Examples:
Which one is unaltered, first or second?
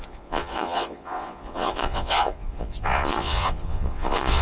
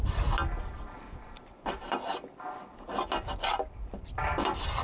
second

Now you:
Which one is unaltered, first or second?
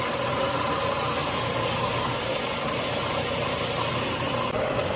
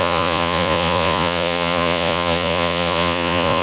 first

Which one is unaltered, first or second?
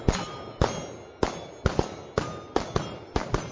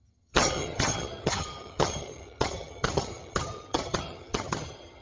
first